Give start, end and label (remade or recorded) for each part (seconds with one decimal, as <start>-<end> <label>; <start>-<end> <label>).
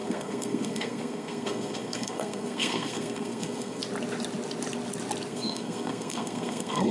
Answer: 0.0-3.8 remade; 3.8-5.3 recorded; 5.3-6.9 remade